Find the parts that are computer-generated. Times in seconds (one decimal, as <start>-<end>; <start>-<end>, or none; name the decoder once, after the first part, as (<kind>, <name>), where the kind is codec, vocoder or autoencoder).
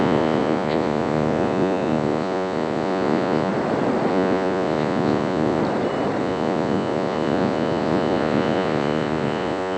0.0-3.5 (vocoder, Vocos); 4.1-5.6; 6.2-9.8